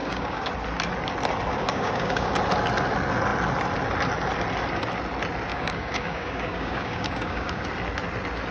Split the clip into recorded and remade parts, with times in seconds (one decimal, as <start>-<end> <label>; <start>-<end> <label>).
0.0-0.5 remade; 0.5-1.5 recorded; 1.5-2.4 remade; 2.4-5.5 recorded; 5.5-7.6 remade; 7.6-8.5 recorded